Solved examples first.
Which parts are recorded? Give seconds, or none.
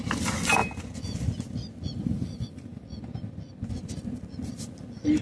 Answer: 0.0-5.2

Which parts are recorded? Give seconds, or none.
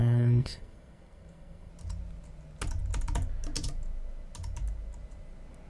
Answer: 1.7-5.7